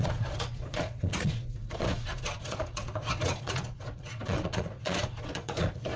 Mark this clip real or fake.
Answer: fake